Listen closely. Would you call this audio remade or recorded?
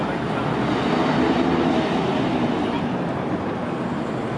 recorded